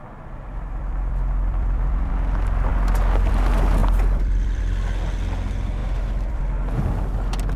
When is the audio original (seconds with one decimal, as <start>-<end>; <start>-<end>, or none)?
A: 2.1-3.8; 4.6-5.8; 6.4-7.6